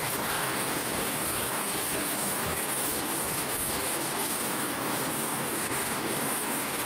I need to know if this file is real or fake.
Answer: fake